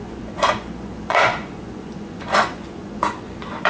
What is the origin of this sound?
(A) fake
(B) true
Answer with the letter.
A